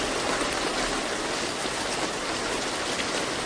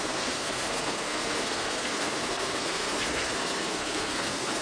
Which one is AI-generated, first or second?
second